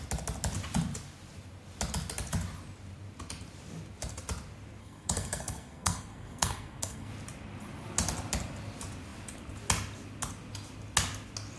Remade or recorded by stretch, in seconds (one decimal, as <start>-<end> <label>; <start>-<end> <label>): 0.0-4.8 recorded; 4.8-7.1 remade; 7.1-11.6 recorded